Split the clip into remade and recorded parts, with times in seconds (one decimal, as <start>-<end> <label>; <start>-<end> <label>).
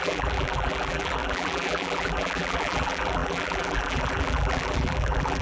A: 0.0-5.4 remade